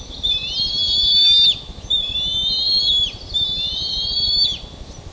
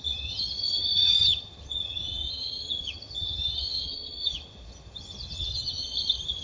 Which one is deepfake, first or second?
second